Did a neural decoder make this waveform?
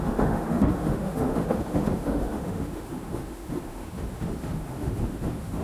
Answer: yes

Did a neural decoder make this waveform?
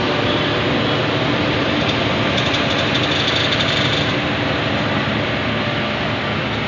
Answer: no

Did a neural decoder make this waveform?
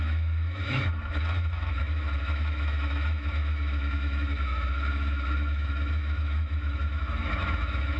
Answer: yes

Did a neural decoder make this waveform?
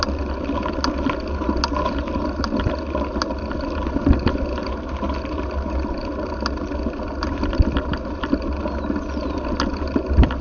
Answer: no